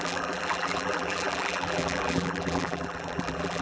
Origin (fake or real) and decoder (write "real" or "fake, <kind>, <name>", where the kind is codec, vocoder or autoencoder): fake, vocoder, BigVGAN v2